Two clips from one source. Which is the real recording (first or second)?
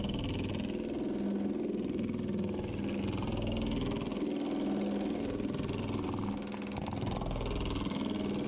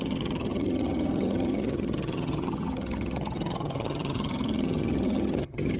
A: first